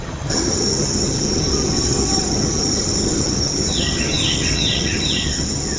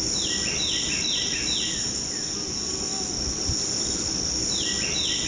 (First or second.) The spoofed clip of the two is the first